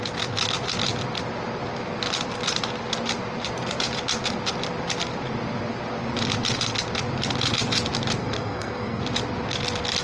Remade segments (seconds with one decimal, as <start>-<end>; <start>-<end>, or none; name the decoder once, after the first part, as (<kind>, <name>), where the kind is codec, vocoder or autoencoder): 8.2-9.0 (codec, SNAC)